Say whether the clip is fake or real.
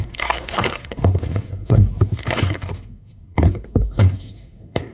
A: fake